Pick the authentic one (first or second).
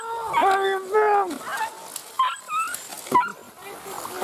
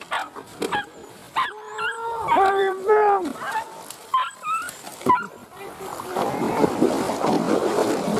first